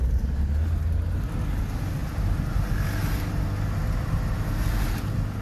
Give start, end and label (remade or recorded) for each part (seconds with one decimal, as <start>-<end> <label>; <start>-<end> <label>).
0.0-5.4 recorded